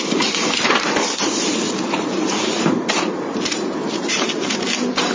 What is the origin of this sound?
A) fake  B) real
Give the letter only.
A